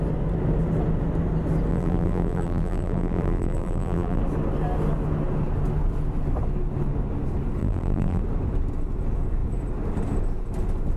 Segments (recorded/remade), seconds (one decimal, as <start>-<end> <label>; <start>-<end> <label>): 0.0-1.7 recorded; 1.7-4.2 remade; 4.2-7.6 recorded; 7.6-8.2 remade; 8.2-11.0 recorded